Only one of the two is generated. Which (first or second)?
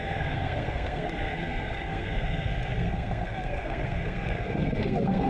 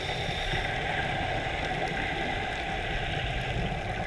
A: first